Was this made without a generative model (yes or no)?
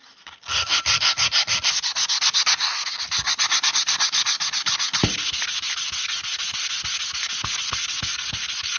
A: yes